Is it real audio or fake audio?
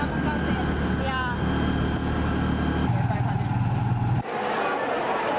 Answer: real